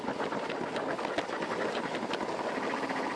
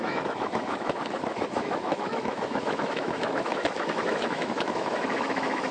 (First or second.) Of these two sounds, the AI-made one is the second